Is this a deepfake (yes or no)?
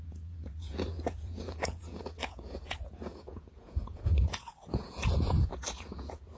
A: yes